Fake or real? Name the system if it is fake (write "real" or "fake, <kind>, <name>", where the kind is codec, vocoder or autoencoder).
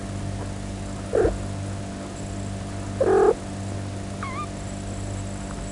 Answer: real